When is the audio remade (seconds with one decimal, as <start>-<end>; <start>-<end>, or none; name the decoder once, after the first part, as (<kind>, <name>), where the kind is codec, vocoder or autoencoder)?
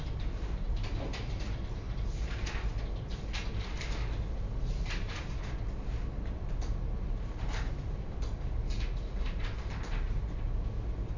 none